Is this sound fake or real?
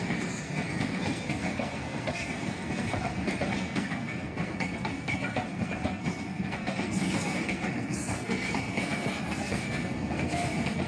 fake